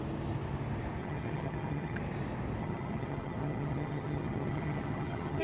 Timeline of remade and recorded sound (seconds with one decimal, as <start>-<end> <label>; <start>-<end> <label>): 0.0-1.0 recorded; 1.0-2.0 remade; 2.0-2.6 recorded; 2.6-5.4 remade